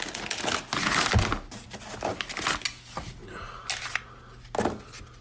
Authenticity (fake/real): real